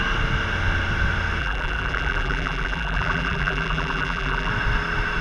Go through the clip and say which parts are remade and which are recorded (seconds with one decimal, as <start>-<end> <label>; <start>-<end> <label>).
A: 0.0-1.4 recorded; 1.4-4.5 remade; 4.5-5.2 recorded